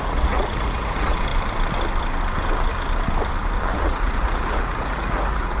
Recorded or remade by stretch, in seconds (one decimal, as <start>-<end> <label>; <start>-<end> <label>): 0.0-1.3 remade; 1.3-3.7 recorded; 3.7-5.6 remade